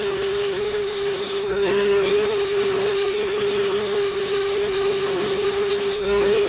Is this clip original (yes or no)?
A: no